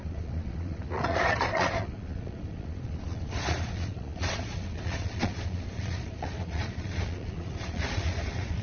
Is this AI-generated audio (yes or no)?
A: yes